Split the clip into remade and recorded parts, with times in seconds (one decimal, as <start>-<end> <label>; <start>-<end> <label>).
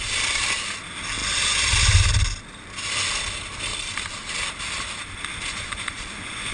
0.0-5.3 recorded; 5.3-6.5 remade